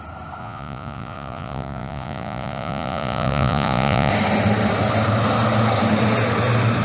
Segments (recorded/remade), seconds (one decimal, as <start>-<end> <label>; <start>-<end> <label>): 0.0-0.4 recorded; 0.4-4.1 remade; 4.1-6.8 recorded